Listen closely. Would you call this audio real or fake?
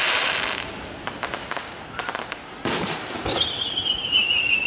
real